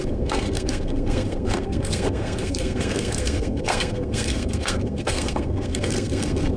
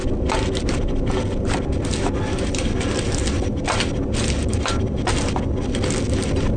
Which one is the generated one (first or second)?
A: first